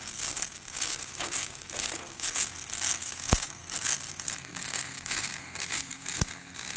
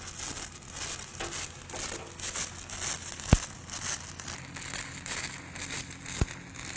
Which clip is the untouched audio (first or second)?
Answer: second